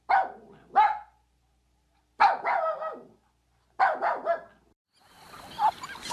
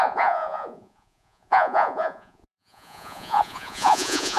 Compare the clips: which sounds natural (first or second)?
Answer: first